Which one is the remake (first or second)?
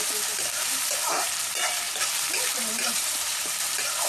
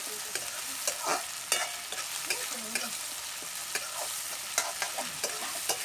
first